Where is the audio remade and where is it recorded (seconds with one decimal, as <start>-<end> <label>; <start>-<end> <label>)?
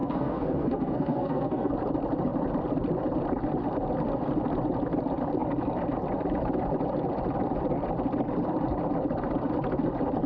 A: 0.0-1.7 remade; 1.7-10.3 recorded